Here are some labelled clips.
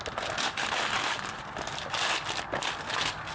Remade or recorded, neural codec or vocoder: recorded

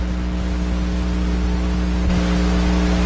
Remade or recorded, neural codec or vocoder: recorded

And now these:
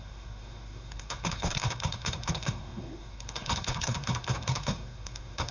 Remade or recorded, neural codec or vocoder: remade, codec, SNAC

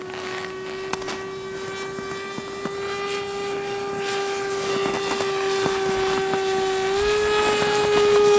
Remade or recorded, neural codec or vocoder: recorded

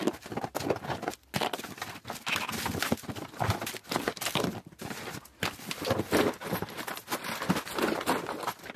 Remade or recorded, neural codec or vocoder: recorded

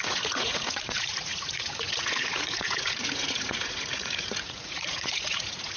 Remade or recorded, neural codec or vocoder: remade, vocoder, Vocos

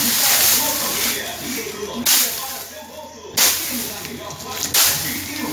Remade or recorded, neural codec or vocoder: recorded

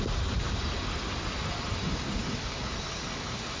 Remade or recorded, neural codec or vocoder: recorded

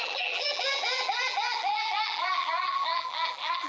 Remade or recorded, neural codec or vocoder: remade, vocoder, BigVGAN v2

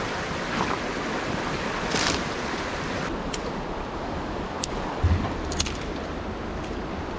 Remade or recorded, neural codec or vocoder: recorded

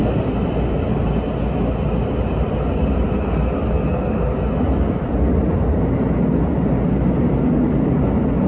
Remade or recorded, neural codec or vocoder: recorded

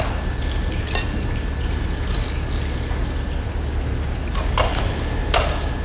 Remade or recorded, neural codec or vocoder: recorded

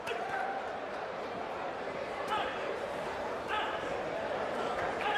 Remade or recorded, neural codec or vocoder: remade, vocoder, BigVGAN v2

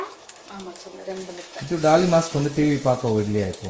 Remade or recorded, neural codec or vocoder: remade, autoencoder, DAC-VAE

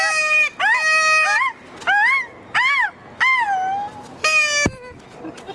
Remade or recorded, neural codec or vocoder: recorded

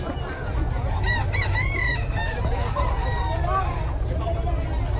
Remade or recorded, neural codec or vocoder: recorded